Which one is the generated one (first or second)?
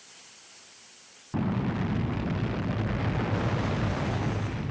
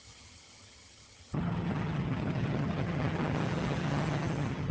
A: second